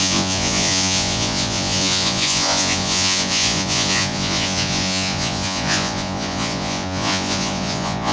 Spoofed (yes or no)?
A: yes